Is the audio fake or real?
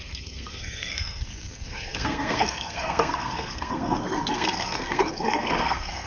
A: fake